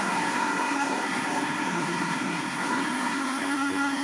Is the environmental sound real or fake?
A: fake